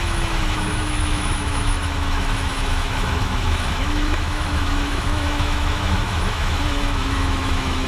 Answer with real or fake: fake